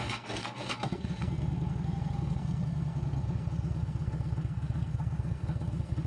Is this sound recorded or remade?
remade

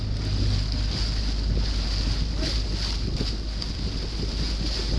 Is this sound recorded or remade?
recorded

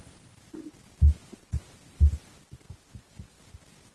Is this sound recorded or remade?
recorded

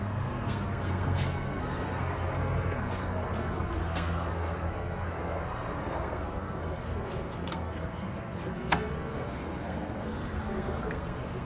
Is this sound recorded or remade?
remade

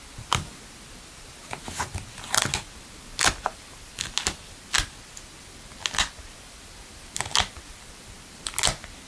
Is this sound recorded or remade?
recorded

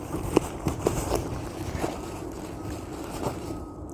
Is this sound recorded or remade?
remade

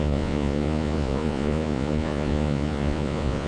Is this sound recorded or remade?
remade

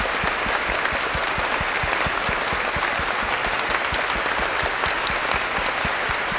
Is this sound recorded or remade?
recorded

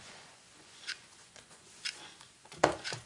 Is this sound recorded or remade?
remade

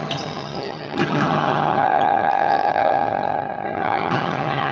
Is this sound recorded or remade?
remade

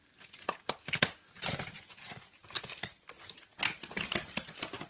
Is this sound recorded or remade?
recorded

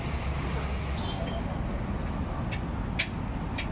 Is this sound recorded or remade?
recorded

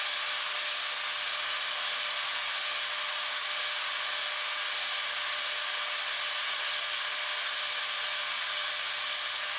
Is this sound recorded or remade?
recorded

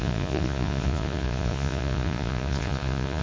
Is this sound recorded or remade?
remade